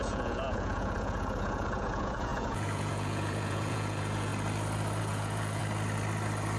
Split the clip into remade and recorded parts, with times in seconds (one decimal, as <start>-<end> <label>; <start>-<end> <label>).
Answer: 0.0-4.3 remade; 4.3-5.0 recorded; 5.0-5.6 remade; 5.6-6.6 recorded